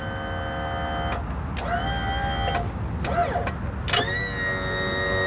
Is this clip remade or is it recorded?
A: recorded